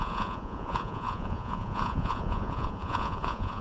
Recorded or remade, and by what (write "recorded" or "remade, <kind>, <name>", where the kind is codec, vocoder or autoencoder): remade, vocoder, Vocos